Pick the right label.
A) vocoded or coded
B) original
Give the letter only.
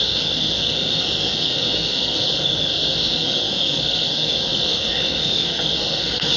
A